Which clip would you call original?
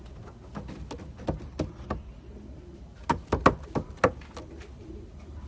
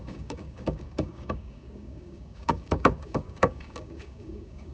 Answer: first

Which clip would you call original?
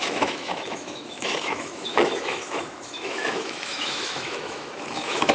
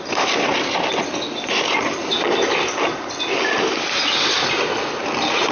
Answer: second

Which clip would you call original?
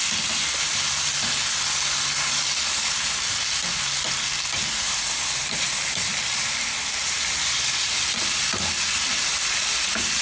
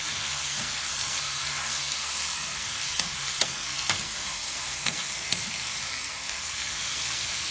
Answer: first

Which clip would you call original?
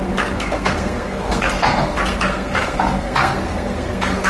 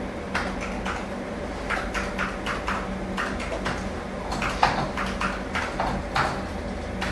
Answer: second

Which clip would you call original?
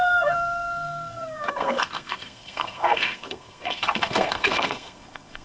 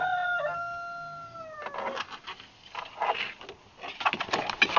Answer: second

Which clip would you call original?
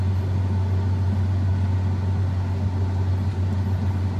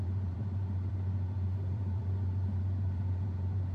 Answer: first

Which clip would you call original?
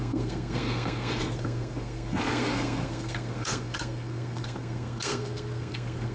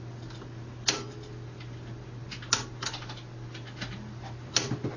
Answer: second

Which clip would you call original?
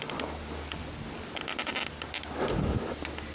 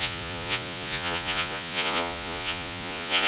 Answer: first